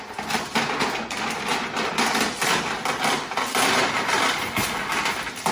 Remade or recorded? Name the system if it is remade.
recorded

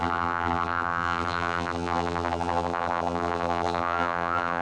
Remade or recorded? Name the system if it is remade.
remade, vocoder, BigVGAN v2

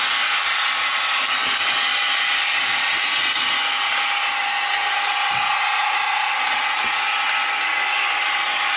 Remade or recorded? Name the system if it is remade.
recorded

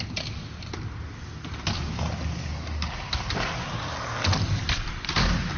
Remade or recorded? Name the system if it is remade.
recorded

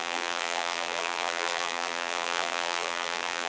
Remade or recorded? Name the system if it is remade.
remade, vocoder, BigVGAN v2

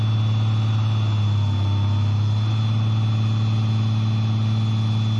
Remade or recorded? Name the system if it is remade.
recorded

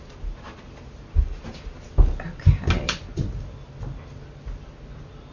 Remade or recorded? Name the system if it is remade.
recorded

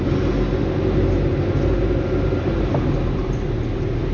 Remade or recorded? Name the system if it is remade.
recorded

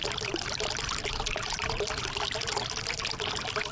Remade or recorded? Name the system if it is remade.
remade, vocoder, BigVGAN v2